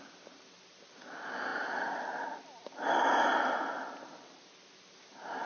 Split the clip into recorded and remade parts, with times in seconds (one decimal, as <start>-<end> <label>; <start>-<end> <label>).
0.0-5.5 recorded

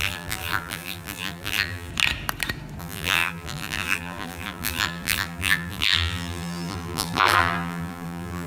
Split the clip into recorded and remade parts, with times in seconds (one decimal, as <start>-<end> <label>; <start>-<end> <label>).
0.0-1.9 remade; 1.9-2.8 recorded; 2.8-8.5 remade

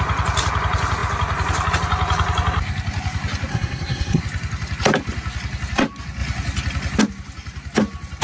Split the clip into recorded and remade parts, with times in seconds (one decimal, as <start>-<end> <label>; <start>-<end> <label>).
0.0-3.5 recorded; 3.5-4.2 remade; 4.2-8.2 recorded